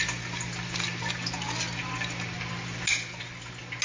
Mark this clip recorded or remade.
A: recorded